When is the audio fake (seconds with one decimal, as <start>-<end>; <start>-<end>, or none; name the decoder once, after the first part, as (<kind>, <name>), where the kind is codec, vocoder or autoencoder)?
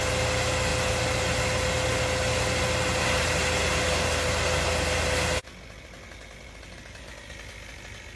none